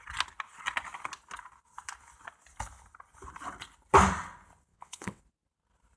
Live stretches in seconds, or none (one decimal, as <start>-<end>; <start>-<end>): 0.0-4.7; 5.2-6.0